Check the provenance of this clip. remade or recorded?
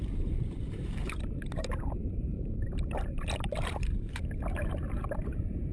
remade